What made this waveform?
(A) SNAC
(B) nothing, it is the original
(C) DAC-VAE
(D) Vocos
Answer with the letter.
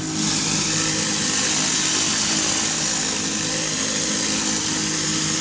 B